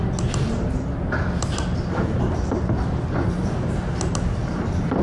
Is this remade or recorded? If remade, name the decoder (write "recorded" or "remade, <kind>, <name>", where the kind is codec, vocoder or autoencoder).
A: recorded